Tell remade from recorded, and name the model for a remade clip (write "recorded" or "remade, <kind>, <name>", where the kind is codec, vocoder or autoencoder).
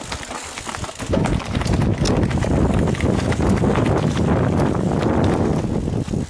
recorded